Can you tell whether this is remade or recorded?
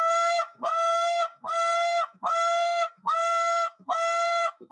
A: remade